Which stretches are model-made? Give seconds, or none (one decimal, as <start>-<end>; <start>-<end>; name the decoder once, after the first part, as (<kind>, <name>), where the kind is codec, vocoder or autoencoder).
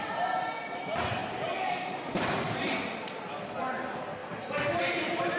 none